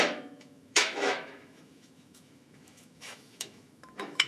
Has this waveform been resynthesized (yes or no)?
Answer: yes